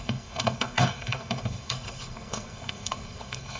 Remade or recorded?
remade